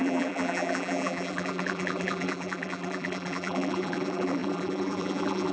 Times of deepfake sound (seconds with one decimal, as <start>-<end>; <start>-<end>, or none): 0.0-5.5